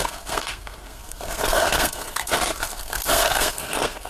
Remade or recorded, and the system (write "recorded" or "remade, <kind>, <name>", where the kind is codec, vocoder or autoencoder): remade, codec, SNAC